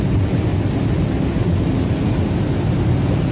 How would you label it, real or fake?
real